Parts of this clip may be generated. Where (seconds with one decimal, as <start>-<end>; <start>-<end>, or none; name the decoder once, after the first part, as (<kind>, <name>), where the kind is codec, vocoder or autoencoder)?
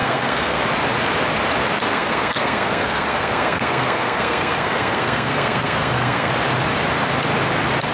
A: 0.0-0.6 (codec, SNAC); 1.9-6.3